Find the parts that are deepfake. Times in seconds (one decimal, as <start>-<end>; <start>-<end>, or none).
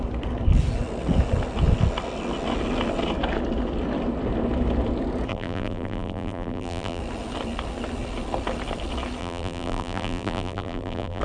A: 5.3-7.0; 9.2-11.2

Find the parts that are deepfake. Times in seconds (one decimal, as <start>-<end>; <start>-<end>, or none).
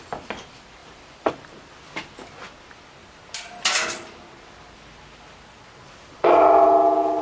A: none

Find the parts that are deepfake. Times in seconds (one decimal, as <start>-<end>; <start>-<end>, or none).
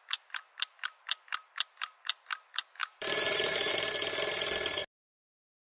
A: 2.8-3.7